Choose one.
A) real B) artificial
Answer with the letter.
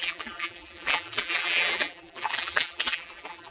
B